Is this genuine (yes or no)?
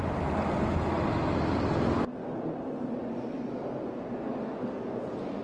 yes